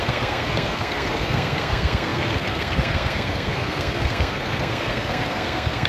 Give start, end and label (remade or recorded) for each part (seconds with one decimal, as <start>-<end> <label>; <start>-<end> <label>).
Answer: 0.0-5.9 remade